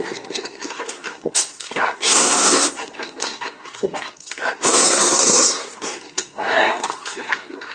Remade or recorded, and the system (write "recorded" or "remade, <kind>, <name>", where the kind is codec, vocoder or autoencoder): remade, codec, SNAC